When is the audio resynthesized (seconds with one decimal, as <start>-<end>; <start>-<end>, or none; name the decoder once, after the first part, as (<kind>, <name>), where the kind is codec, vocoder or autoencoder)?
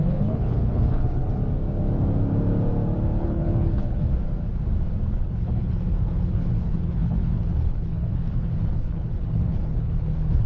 0.0-1.4 (codec, HILCodec); 3.2-4.1; 5.1-10.5